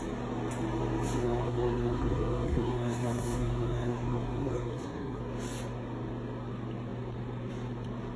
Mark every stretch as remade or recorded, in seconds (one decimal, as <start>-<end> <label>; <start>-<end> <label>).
0.0-1.2 recorded; 1.2-5.2 remade; 5.2-8.2 recorded